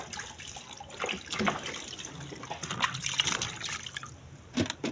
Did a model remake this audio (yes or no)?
no